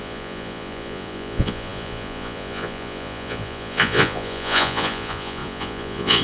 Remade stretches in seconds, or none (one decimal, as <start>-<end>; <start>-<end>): 0.0-6.2

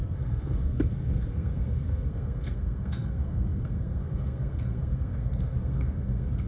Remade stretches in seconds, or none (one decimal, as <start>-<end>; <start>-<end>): 0.0-6.5

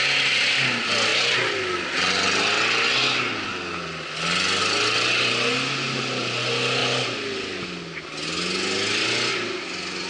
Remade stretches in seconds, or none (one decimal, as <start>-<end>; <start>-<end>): none

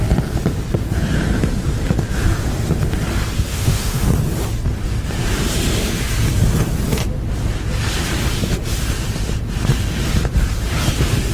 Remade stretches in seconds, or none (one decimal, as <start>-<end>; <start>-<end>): 3.5-4.1

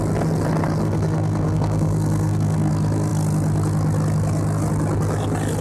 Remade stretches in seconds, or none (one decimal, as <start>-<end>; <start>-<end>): 0.8-2.7

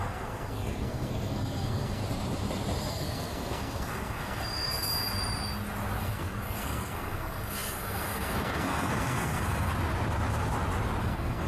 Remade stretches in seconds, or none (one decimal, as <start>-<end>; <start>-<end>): 0.0-2.0; 2.9-4.9; 6.0-9.7; 11.0-11.5

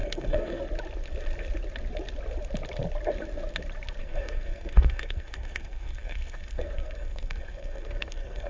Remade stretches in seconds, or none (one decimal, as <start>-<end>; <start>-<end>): 0.0-0.6; 4.0-8.5